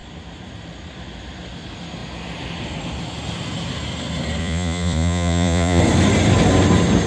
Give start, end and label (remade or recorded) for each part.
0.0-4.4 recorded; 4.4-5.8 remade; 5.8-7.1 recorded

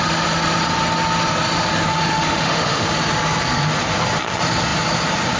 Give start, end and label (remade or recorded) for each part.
0.0-1.9 recorded; 1.9-2.9 remade; 2.9-5.4 recorded

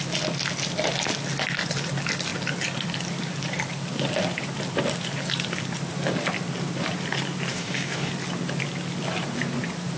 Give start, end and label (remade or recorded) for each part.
0.0-7.5 recorded; 7.5-8.1 remade; 8.1-10.0 recorded

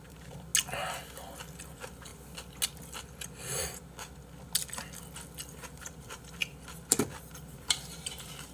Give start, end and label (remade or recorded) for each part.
0.0-0.5 remade; 0.5-1.7 recorded; 1.7-2.1 remade; 2.1-5.8 recorded; 5.8-6.4 remade; 6.4-6.9 recorded; 6.9-8.5 remade